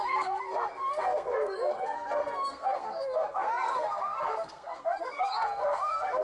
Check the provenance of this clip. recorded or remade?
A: remade